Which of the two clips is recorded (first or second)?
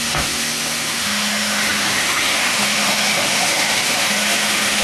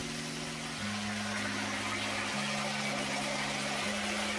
second